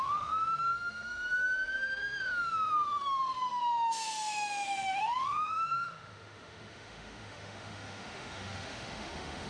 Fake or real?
fake